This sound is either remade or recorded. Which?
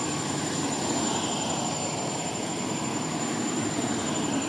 remade